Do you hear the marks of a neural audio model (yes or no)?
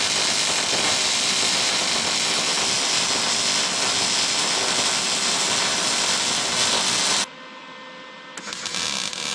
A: no